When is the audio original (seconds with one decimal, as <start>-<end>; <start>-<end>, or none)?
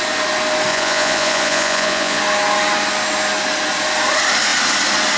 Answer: 0.0-0.7; 2.2-5.2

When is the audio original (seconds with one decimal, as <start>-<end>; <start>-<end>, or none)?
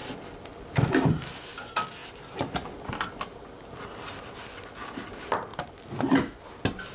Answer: 0.0-6.9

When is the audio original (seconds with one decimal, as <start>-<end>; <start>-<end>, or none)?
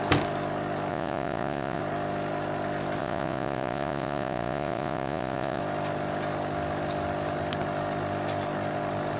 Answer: 0.0-0.9; 1.8-3.0; 5.6-9.2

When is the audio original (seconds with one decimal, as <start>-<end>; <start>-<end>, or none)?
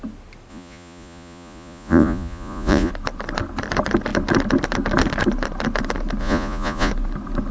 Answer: 0.0-0.5; 2.9-6.2; 6.9-7.5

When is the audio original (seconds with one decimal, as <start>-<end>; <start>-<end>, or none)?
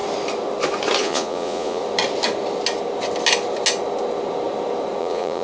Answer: 0.0-1.0; 1.8-5.0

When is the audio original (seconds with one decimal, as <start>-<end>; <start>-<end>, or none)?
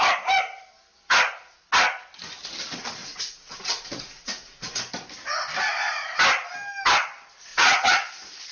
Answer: 0.0-3.0; 4.8-7.5; 8.1-8.5